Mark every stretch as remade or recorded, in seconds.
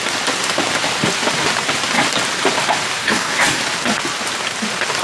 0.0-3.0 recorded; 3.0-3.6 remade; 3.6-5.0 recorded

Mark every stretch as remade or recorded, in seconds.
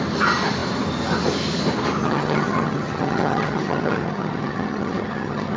0.0-2.0 recorded; 2.0-5.6 remade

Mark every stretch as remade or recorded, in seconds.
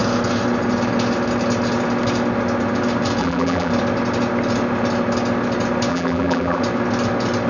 0.0-3.2 recorded; 3.2-3.7 remade; 3.7-5.9 recorded; 5.9-6.6 remade; 6.6-7.5 recorded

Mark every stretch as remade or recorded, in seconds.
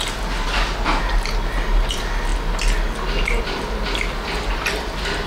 0.0-5.3 recorded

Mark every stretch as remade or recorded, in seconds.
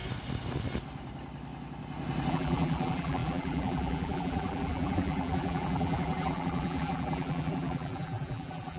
0.0-2.3 recorded; 2.3-8.8 remade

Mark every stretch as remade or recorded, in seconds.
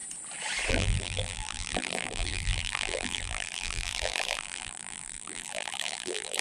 0.0-0.7 recorded; 0.7-6.4 remade